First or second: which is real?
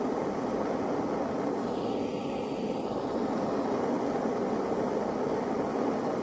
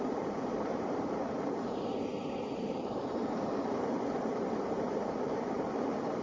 first